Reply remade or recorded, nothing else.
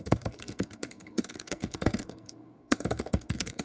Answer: remade